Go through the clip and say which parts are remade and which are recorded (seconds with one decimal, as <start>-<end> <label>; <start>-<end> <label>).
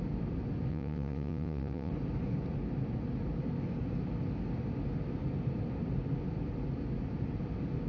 0.0-0.7 recorded; 0.7-1.9 remade; 1.9-7.9 recorded